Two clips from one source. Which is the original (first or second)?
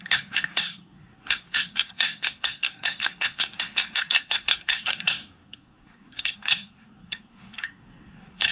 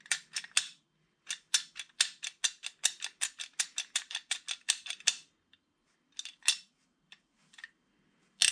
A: second